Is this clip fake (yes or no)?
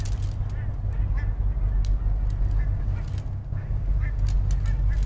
no